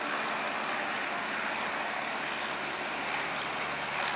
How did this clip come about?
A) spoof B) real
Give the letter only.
B